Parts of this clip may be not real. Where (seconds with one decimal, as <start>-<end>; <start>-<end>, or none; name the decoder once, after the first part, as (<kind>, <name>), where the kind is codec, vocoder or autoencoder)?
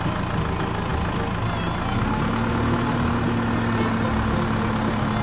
none